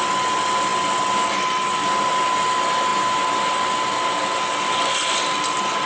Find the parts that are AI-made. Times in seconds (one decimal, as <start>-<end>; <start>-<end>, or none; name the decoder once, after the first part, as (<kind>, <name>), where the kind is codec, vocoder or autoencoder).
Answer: none